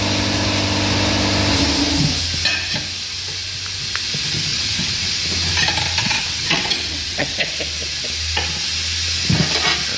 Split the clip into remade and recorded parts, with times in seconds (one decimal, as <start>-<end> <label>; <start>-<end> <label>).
0.0-4.5 recorded; 4.5-5.0 remade; 5.0-6.0 recorded; 6.0-7.5 remade; 7.5-10.0 recorded